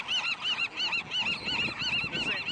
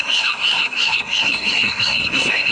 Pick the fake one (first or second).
second